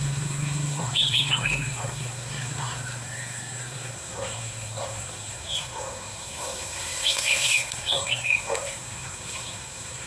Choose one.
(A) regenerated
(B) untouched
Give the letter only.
A